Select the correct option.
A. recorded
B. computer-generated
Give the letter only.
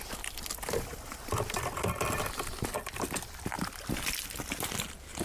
B